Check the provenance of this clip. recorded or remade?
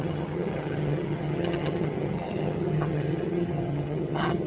remade